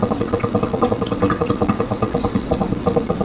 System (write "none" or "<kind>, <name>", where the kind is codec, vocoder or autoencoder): vocoder, WaveNeXt